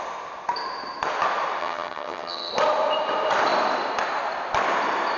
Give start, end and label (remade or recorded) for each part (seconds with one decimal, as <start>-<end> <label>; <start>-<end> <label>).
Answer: 0.0-1.6 recorded; 1.6-2.5 remade; 2.5-5.2 recorded